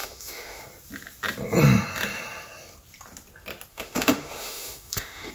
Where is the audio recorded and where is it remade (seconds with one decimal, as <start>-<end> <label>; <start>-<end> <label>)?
0.0-0.6 remade; 0.6-3.7 recorded; 3.7-5.3 remade